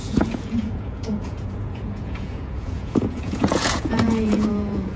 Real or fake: fake